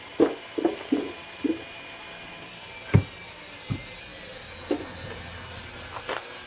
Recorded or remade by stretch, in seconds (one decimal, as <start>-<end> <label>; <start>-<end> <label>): 0.0-6.5 recorded